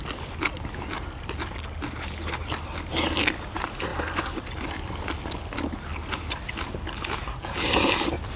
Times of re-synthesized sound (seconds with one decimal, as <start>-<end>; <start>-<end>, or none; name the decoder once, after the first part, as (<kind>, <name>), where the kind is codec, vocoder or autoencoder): 3.9-4.5 (vocoder, BigVGAN v2)